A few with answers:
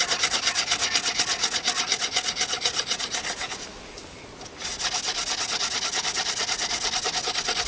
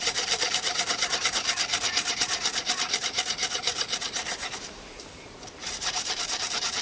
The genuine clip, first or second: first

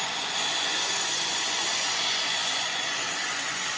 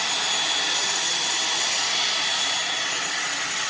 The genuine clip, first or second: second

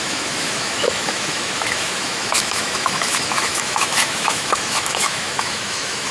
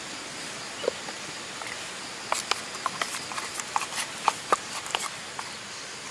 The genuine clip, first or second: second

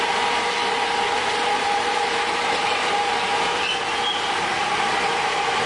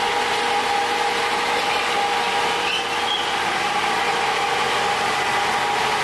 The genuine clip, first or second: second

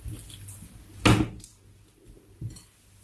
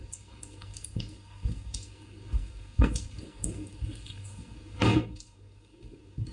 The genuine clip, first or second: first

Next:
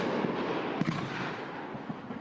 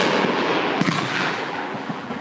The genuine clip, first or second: first